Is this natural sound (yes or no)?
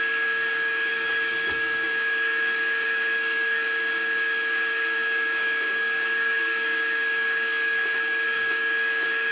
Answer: no